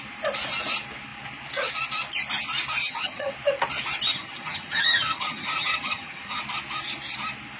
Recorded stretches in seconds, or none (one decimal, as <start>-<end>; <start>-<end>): 0.0-2.8; 3.3-4.1; 6.4-7.6